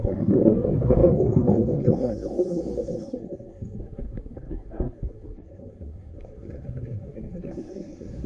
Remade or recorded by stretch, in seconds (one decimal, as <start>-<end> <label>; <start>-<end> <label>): 0.0-8.3 remade